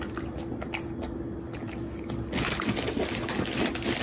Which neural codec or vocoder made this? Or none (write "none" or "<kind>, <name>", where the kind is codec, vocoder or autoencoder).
none